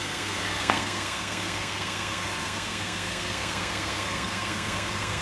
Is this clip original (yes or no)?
no